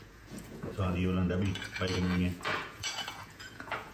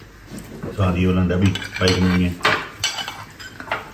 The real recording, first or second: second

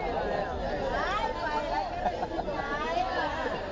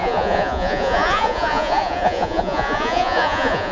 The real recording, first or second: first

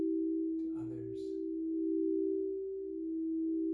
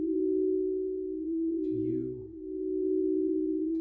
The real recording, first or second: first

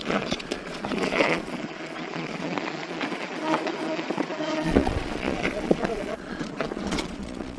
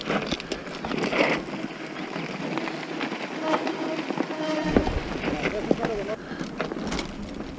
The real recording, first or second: second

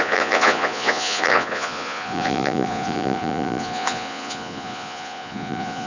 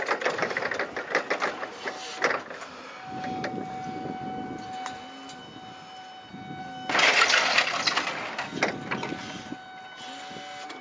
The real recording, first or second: second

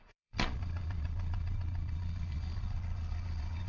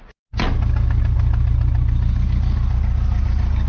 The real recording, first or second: second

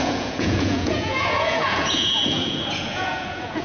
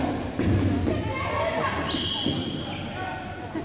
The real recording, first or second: second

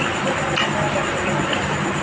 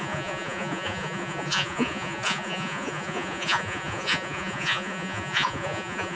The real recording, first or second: first